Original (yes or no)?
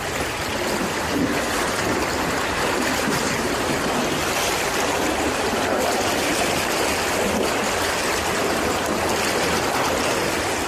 yes